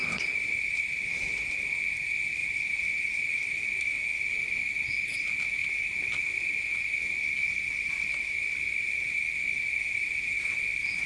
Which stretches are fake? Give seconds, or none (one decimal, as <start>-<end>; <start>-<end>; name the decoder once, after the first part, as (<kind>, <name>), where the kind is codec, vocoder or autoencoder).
0.0-1.7 (vocoder, BigVGAN v2); 2.4-3.8; 5.6-11.1